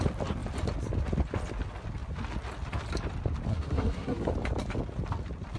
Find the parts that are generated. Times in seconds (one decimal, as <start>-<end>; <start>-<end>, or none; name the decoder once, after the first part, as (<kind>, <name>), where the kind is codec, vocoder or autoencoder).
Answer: 3.5-4.3 (codec, SNAC)